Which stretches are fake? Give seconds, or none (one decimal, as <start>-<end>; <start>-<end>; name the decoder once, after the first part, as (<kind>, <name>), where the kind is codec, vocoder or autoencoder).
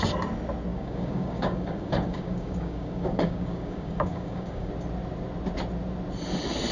0.7-4.7 (codec, DAC)